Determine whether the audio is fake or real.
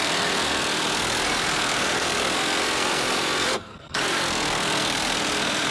fake